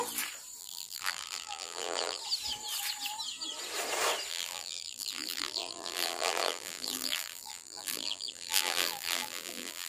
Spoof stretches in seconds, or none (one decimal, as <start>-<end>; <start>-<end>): 0.6-2.2; 4.3-9.9